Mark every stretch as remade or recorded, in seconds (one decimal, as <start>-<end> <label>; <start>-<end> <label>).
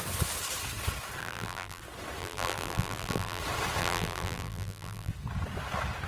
0.0-1.2 recorded; 1.2-1.8 remade; 1.8-2.2 recorded; 2.2-3.4 remade; 3.4-3.8 recorded; 3.8-5.1 remade; 5.1-6.1 recorded